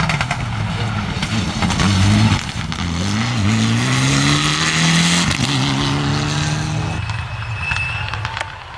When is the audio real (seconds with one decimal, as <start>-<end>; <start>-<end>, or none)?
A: 0.0-8.8